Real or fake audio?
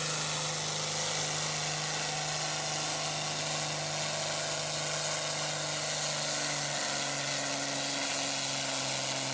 real